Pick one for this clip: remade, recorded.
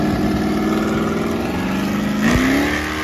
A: recorded